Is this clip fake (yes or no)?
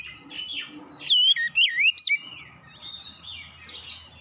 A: no